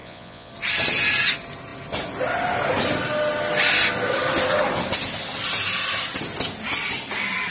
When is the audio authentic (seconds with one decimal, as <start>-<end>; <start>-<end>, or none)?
0.5-7.5